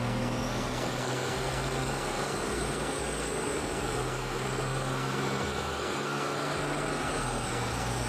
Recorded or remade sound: remade